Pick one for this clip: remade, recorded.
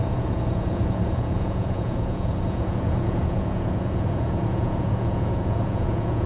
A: remade